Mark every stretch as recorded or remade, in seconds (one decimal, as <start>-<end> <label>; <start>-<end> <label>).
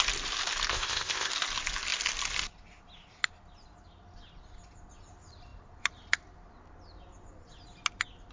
0.0-0.7 recorded; 0.7-1.3 remade; 1.3-8.3 recorded